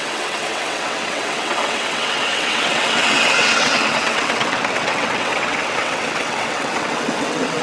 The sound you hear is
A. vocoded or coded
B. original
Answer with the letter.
A